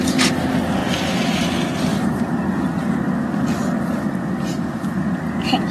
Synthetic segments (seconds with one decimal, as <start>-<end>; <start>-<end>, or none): none